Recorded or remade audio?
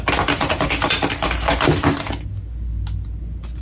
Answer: recorded